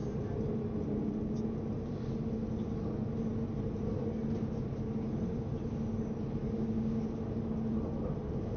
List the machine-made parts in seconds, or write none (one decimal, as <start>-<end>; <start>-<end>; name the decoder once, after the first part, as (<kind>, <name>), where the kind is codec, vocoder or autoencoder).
none